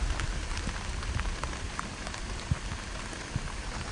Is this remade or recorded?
recorded